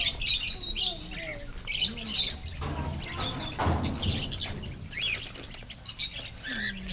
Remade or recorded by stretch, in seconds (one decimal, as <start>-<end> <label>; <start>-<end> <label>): 0.0-6.9 recorded